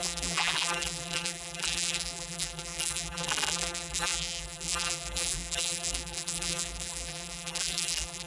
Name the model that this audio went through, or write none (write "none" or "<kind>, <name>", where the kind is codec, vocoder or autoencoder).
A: vocoder, BigVGAN v2